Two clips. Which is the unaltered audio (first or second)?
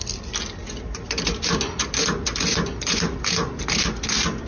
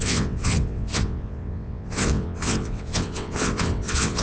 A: first